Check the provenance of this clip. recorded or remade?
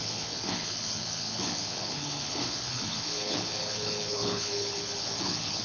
remade